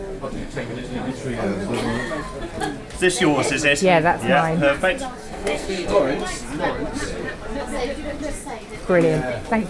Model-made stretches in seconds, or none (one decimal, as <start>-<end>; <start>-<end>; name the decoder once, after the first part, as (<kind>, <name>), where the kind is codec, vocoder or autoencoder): 0.4-1.1 (codec, SNAC); 5.2-6.0